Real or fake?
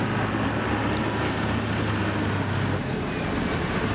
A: real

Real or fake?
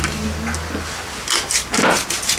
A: real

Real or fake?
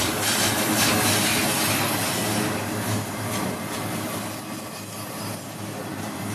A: real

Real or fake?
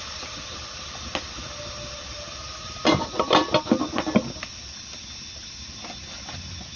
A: real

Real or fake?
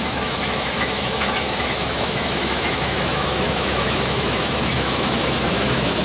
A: fake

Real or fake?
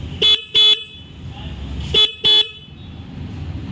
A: real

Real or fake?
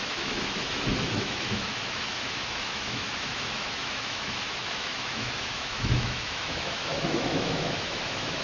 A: fake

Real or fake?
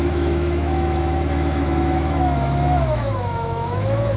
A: fake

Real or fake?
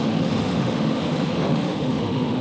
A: fake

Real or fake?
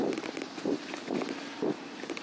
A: real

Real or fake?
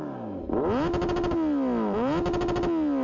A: real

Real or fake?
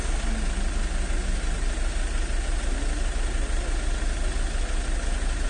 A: real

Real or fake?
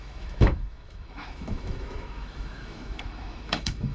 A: fake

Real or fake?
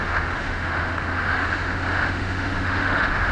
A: fake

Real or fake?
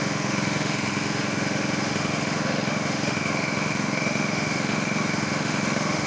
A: fake